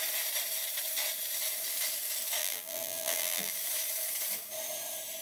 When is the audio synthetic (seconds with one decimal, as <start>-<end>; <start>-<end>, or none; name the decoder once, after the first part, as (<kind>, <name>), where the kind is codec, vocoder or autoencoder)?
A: 2.4-3.5 (vocoder, BigVGAN v2)